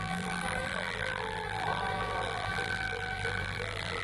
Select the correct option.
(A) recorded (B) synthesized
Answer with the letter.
B